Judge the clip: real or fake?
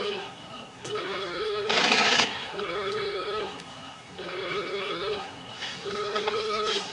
fake